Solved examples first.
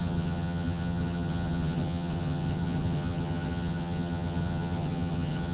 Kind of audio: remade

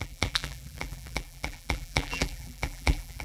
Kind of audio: remade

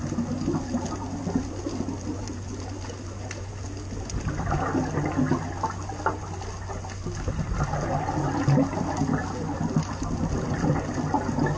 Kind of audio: recorded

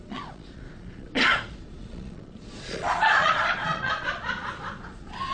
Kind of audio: remade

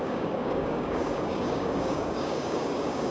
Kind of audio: remade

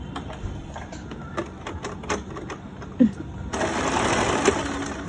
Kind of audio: recorded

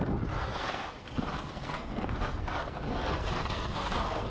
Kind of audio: remade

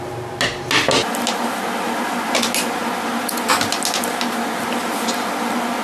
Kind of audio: recorded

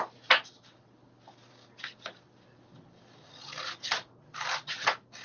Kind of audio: recorded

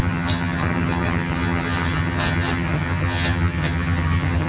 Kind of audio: remade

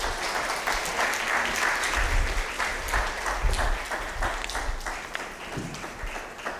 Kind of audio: recorded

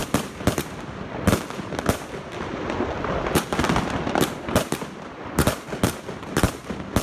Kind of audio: recorded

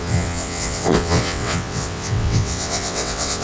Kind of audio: remade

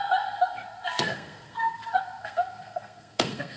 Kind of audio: remade